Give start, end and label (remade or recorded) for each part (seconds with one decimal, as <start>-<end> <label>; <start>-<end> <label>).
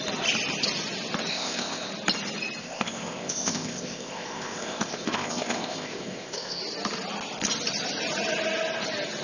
0.0-1.3 recorded; 1.3-1.9 remade; 1.9-2.6 recorded; 2.6-6.6 remade; 6.6-9.2 recorded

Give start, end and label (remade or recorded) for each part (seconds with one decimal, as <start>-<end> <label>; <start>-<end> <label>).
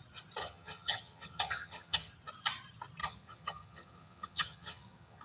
0.0-0.4 recorded; 0.4-2.1 remade; 2.1-3.0 recorded; 3.0-5.2 remade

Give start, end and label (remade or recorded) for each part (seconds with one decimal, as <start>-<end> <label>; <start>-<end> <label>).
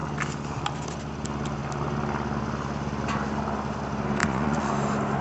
0.0-4.2 recorded; 4.2-4.7 remade; 4.7-5.2 recorded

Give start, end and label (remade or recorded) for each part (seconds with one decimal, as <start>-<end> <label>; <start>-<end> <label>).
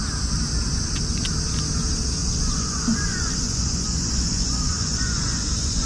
0.0-2.2 recorded; 2.2-5.9 remade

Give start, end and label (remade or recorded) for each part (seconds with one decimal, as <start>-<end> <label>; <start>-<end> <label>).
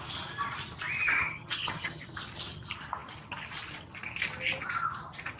0.0-1.0 recorded; 1.0-2.0 remade; 2.0-5.4 recorded